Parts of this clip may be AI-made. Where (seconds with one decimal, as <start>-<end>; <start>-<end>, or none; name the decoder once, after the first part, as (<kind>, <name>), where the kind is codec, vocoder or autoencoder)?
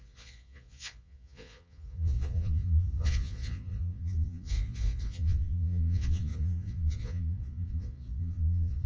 0.0-8.9 (vocoder, Vocos)